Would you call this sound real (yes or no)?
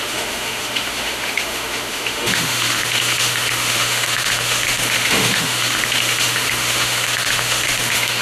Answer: no